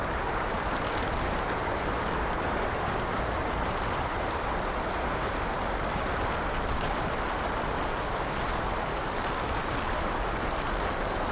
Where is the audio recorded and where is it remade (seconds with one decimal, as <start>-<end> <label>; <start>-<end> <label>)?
0.0-11.3 recorded